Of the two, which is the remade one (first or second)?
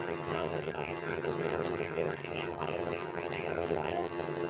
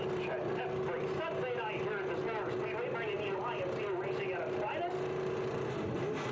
first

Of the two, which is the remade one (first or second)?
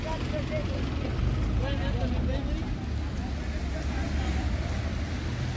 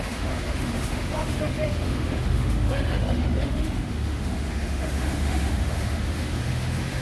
second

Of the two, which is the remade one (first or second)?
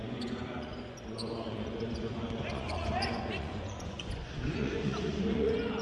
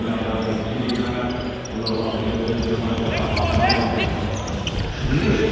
first